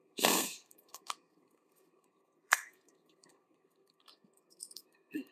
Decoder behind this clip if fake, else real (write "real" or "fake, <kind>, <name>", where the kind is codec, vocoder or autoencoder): fake, codec, SNAC